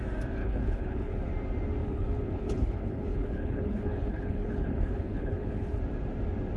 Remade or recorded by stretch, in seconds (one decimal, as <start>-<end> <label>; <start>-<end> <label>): 0.0-0.4 recorded; 0.4-1.3 remade; 1.3-1.8 recorded; 1.8-5.8 remade; 5.8-6.6 recorded